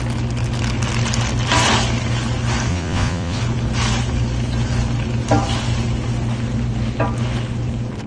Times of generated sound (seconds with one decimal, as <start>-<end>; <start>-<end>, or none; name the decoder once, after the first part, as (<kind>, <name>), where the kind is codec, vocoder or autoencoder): 2.7-3.4 (vocoder, Vocos)